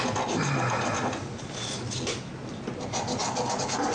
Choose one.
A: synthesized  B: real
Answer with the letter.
B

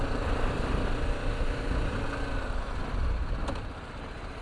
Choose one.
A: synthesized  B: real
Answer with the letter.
B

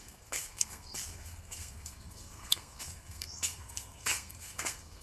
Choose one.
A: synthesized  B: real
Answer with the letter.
A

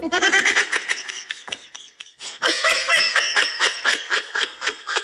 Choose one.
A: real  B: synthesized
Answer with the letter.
B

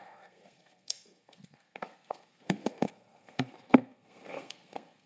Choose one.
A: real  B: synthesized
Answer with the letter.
B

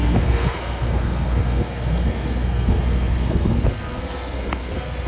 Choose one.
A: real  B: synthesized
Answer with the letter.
B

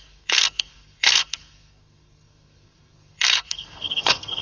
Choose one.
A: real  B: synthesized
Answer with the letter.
B